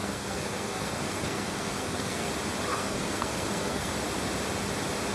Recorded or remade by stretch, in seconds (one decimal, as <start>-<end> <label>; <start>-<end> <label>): 0.0-2.3 remade; 2.3-2.7 recorded; 2.7-3.9 remade; 3.9-5.1 recorded